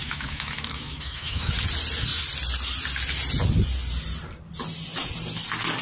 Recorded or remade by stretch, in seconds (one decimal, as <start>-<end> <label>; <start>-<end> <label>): 0.0-1.5 remade; 1.5-5.8 recorded